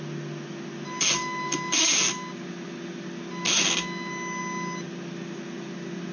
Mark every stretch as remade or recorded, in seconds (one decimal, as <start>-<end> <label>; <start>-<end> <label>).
0.0-6.1 recorded